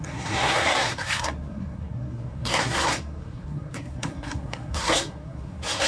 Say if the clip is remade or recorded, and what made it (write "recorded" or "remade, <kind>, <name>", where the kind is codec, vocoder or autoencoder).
remade, codec, SNAC